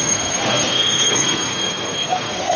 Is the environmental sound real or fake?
fake